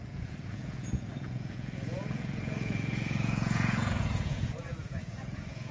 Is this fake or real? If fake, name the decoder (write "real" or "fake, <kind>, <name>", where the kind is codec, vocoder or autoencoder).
fake, vocoder, Vocos